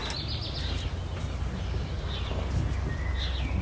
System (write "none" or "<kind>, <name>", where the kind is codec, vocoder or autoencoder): none